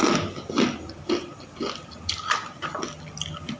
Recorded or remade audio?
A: recorded